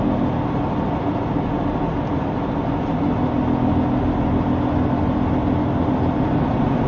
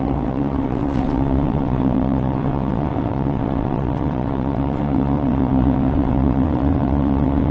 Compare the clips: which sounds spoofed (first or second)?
second